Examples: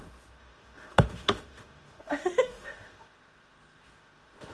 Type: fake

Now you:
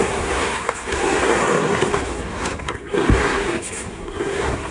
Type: fake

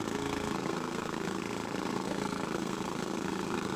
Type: fake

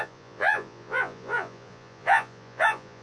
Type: fake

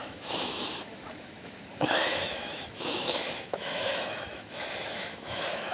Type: fake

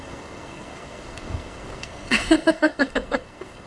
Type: fake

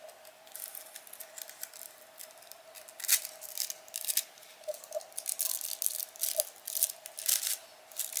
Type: real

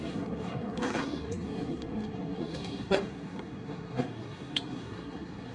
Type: fake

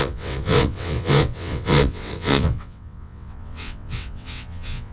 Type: fake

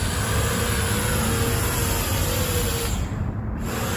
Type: real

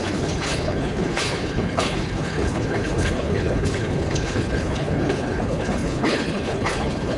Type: fake